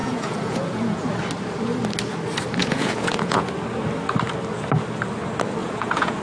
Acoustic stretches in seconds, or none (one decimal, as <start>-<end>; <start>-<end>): 1.1-2.6; 3.5-5.6